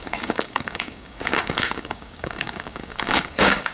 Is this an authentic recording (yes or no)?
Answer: no